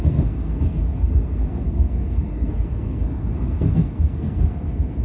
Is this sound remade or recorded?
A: remade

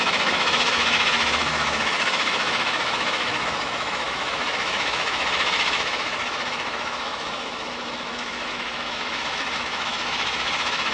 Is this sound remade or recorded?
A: remade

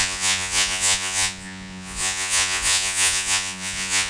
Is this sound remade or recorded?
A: remade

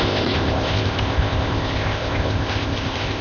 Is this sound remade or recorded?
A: remade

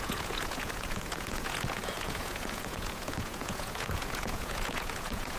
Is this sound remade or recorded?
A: remade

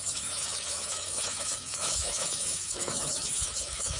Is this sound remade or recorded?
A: remade